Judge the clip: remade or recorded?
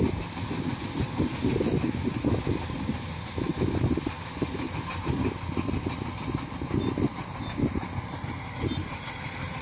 recorded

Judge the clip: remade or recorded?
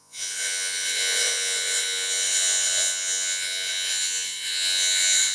remade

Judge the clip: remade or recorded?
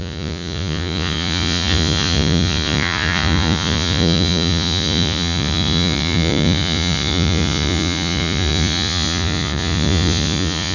remade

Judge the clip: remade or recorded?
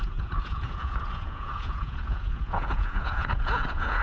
remade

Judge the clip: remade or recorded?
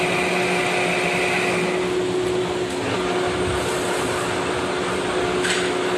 recorded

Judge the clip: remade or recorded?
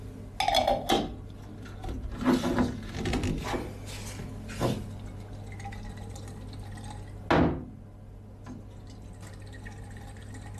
recorded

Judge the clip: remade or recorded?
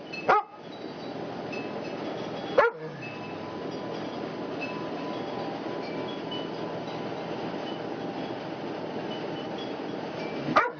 recorded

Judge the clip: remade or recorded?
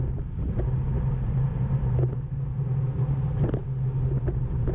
recorded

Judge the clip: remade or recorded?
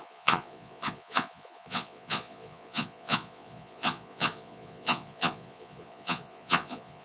remade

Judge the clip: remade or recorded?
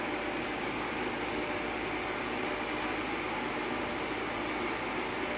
recorded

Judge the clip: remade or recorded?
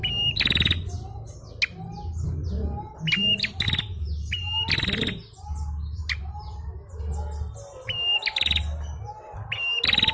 recorded